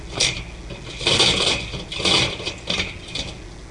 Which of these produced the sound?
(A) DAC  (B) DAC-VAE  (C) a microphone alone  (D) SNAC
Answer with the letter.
C